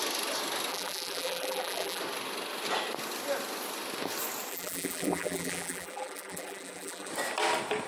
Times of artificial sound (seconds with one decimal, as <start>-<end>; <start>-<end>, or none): 0.7-2.0; 4.5-7.1